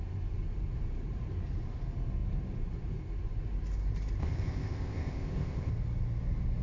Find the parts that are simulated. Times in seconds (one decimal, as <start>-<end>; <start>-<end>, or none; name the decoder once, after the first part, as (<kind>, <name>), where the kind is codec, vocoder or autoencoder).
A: 4.2-5.7 (codec, ZipCodec)